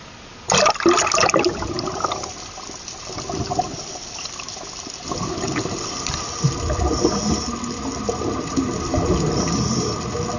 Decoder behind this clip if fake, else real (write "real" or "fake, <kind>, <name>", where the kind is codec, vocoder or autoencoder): real